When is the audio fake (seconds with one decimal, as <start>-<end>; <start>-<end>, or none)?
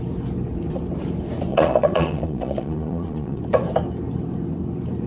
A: 1.5-3.4